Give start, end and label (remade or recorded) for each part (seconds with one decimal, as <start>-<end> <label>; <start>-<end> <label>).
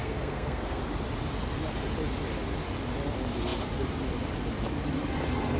0.0-0.8 remade; 0.8-5.6 recorded